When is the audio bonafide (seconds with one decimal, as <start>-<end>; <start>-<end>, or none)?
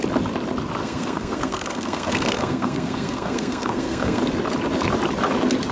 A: 0.0-0.8; 4.2-5.7